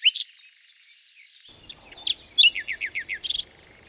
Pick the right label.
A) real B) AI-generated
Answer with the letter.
A